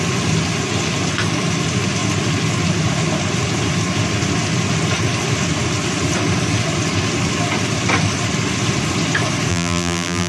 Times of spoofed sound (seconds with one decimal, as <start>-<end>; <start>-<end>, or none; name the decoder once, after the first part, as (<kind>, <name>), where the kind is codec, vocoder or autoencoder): 9.5-10.3 (vocoder, BigVGAN v2)